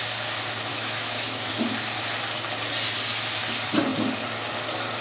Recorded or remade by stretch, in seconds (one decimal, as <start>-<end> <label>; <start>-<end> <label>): 0.0-0.7 recorded; 0.7-1.5 remade; 1.5-5.0 recorded